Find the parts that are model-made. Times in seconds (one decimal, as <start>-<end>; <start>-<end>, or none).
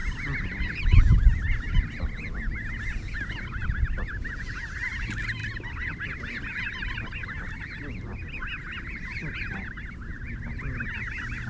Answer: none